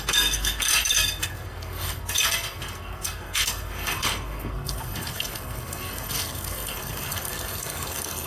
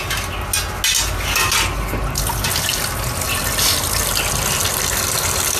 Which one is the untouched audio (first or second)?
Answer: second